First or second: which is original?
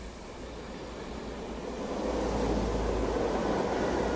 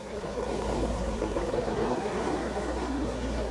first